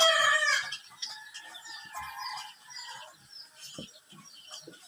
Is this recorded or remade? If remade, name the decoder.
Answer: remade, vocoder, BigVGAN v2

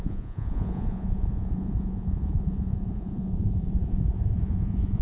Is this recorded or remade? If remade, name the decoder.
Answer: remade, vocoder, Vocos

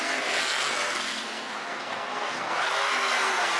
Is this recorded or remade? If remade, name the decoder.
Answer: remade, codec, SNAC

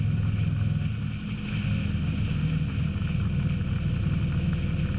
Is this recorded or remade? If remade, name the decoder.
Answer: recorded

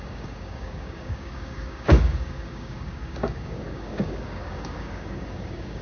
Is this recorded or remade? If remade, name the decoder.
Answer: remade, codec, DAC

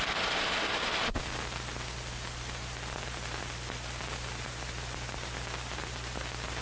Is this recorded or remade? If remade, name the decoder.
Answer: recorded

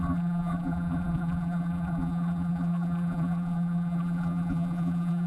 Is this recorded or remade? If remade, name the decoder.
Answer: remade, vocoder, BigVGAN v2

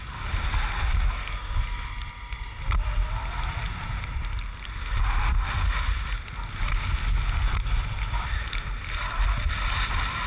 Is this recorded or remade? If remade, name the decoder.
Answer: recorded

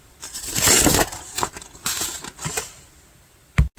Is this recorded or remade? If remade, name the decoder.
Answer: recorded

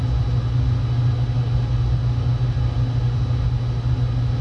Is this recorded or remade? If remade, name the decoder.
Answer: recorded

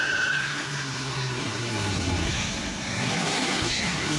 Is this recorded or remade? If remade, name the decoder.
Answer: remade, codec, SNAC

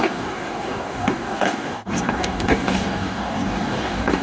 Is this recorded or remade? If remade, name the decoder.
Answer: remade, codec, DAC